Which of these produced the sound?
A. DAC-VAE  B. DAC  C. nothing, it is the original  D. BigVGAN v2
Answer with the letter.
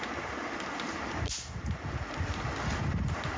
C